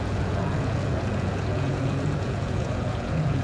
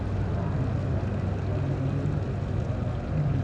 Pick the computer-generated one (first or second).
first